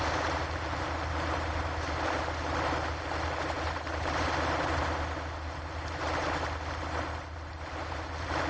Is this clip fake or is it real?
real